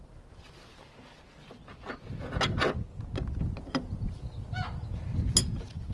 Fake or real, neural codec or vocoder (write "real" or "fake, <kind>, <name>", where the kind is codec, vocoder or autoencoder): real